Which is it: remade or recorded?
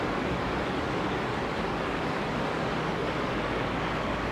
remade